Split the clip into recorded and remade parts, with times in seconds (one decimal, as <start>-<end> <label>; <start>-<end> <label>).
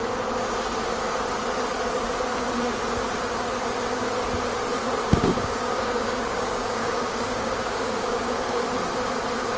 0.0-5.0 recorded; 5.0-8.6 remade; 8.6-9.6 recorded